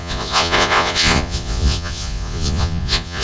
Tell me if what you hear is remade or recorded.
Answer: remade